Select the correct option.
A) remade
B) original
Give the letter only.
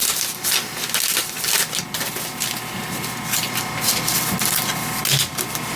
B